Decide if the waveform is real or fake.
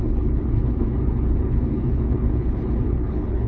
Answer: fake